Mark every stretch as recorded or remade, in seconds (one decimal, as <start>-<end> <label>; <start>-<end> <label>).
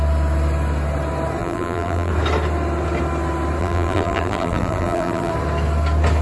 0.0-1.4 recorded; 1.4-2.1 remade; 2.1-3.6 recorded; 3.6-5.3 remade; 5.3-6.2 recorded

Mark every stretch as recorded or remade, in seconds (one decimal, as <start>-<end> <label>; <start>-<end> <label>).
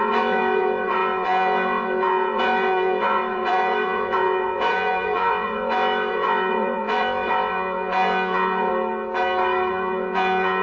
0.0-8.7 remade; 8.7-9.7 recorded; 9.7-10.6 remade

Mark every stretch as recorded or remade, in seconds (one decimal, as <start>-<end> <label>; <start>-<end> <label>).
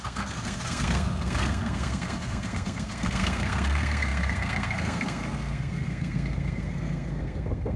0.0-7.8 remade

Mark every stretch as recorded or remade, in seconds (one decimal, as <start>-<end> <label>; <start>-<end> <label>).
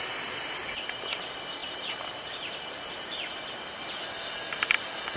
0.0-1.6 recorded; 1.6-2.4 remade; 2.4-5.2 recorded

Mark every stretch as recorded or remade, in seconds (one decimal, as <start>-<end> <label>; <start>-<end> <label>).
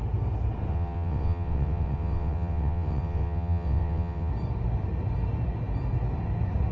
0.0-0.7 recorded; 0.7-4.3 remade; 4.3-6.7 recorded